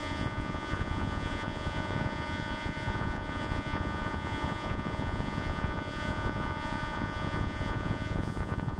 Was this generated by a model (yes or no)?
yes